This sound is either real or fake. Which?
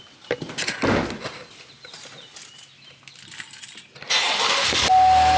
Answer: real